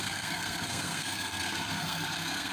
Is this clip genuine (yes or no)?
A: no